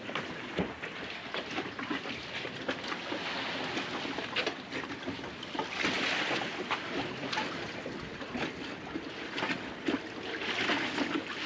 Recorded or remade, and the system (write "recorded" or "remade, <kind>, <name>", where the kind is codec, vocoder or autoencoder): recorded